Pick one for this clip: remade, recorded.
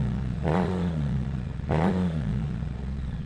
remade